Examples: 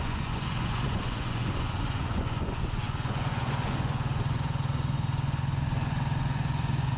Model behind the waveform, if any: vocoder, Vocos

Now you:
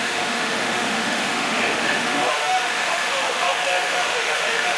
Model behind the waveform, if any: autoencoder, DAC-VAE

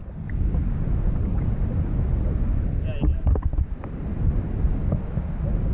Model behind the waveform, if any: none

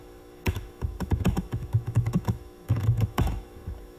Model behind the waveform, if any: autoencoder, DAC-VAE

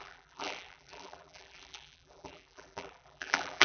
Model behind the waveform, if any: vocoder, BigVGAN v2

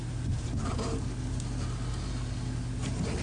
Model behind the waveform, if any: none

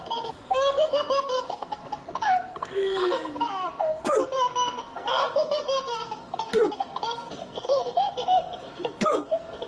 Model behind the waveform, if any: codec, SNAC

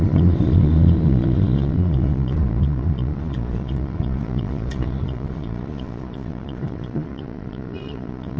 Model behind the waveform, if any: vocoder, Vocos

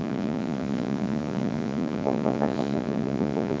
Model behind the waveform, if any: vocoder, Vocos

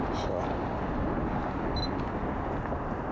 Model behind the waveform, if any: none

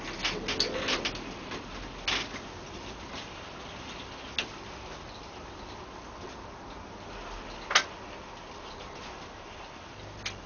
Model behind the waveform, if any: none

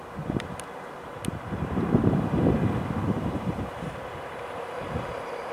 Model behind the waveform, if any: vocoder, BigVGAN v2